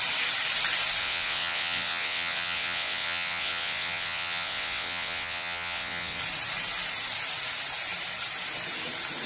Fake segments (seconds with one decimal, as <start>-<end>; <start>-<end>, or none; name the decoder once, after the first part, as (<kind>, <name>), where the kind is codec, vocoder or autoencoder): 1.0-6.2 (vocoder, WaveNeXt)